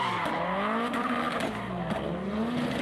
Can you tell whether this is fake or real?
real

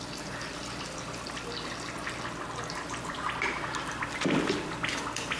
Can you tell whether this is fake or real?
real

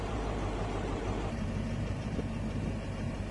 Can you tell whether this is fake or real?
fake